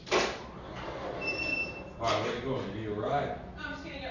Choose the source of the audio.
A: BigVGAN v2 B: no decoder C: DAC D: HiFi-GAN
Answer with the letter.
B